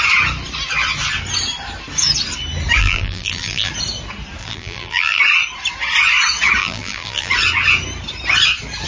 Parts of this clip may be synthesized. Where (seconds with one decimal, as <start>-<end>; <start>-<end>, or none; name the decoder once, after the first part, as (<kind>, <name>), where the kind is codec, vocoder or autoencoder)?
2.8-3.7 (vocoder, BigVGAN v2); 4.4-5.2; 6.6-7.3